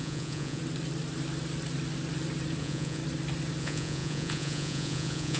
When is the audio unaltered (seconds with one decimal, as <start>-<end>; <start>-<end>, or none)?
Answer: 0.6-2.6; 3.0-3.6